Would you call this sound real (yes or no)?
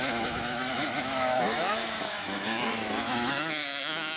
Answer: no